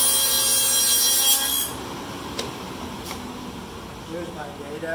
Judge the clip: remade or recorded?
recorded